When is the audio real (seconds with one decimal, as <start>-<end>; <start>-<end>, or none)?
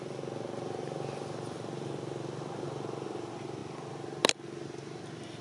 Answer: 0.0-5.4